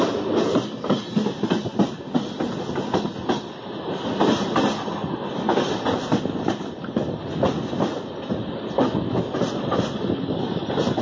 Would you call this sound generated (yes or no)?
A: no